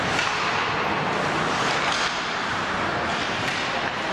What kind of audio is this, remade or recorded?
recorded